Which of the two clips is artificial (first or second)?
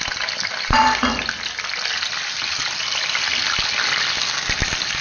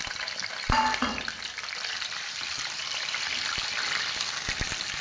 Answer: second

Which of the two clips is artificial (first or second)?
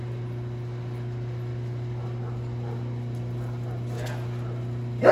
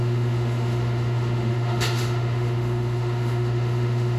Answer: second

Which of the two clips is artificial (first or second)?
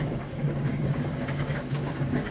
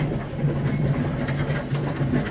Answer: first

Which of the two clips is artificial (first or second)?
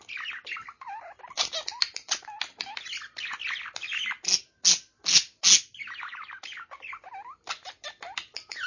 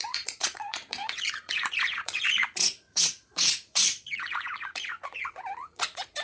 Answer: second